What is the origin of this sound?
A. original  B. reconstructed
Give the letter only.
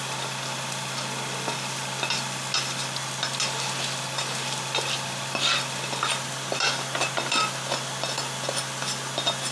A